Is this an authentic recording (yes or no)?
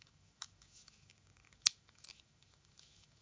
no